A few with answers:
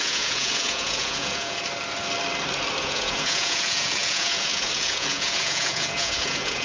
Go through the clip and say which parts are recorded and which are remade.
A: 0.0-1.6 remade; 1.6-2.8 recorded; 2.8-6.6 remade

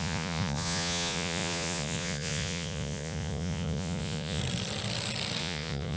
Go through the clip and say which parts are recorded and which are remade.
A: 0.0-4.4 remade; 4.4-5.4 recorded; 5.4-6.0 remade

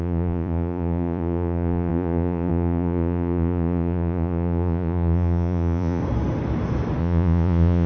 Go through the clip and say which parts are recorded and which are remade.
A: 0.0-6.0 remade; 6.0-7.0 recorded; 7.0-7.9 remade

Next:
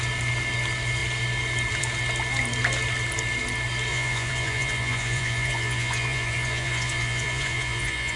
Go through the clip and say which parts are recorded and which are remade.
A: 0.0-3.9 recorded; 3.9-8.2 remade

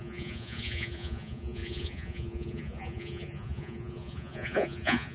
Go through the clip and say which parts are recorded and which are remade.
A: 0.0-5.1 remade

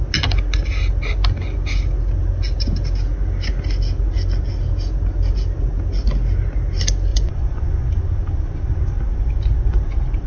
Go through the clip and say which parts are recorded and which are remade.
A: 0.0-7.1 recorded; 7.1-7.9 remade; 7.9-10.3 recorded

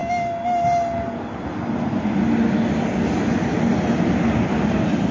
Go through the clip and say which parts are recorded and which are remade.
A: 0.0-5.1 recorded

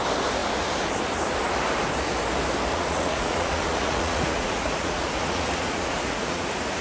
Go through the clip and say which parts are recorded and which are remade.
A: 0.0-2.7 recorded; 2.7-6.8 remade